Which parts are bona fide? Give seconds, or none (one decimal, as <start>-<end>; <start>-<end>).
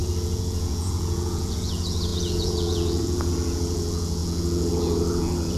none